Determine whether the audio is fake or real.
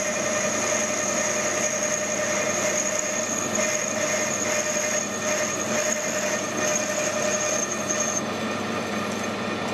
real